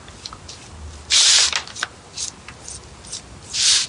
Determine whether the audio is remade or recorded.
recorded